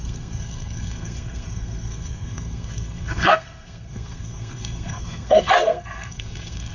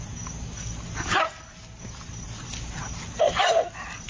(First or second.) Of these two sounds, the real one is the second